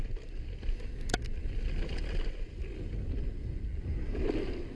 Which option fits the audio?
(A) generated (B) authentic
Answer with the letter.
B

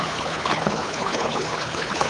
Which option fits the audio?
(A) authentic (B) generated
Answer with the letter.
B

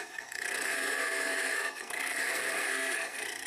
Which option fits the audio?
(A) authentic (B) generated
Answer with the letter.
B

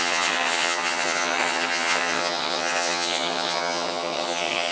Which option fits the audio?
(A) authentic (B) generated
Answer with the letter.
B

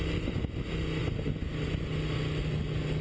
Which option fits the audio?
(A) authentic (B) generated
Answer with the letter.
A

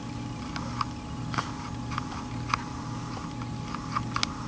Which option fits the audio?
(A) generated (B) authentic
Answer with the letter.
B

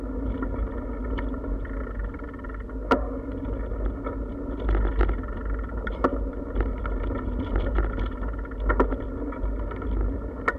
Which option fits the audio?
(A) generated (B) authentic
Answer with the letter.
B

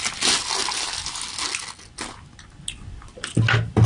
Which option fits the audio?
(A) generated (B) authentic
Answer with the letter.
B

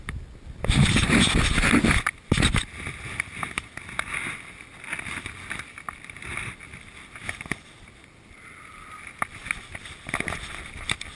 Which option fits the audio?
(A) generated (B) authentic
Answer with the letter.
B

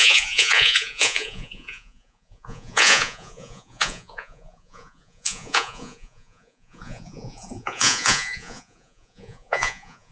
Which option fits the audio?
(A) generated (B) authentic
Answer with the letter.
A